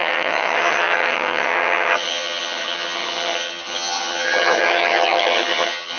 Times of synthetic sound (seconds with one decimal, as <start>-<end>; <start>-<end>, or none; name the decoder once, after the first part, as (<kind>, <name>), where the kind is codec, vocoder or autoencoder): 0.0-6.0 (vocoder, HiFi-GAN)